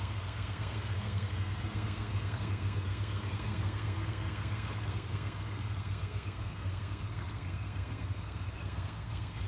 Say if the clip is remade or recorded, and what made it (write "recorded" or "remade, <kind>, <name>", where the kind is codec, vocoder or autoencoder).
remade, codec, SNAC